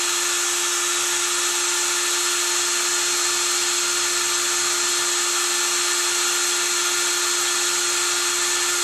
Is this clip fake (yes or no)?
no